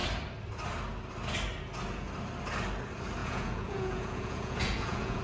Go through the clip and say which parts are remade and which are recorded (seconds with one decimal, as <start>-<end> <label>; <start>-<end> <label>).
0.0-3.2 recorded; 3.2-5.2 remade

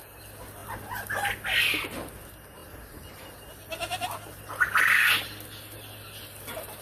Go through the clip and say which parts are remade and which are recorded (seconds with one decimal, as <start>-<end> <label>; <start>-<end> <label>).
0.0-6.8 recorded

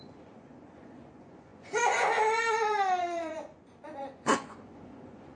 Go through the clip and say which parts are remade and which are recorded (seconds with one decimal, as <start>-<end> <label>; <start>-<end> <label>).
0.0-5.4 remade